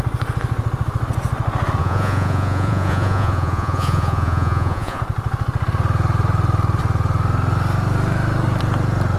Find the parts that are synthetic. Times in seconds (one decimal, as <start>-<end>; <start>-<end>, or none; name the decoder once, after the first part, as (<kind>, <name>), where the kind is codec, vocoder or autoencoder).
1.8-5.0 (vocoder, Vocos)